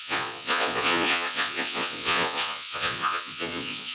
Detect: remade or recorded remade